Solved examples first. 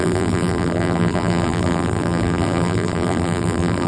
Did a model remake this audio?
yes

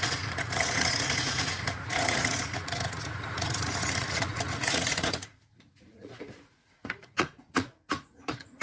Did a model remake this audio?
yes